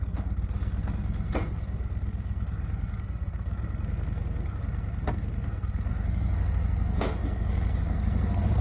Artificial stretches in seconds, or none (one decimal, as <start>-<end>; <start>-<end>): 0.0-8.6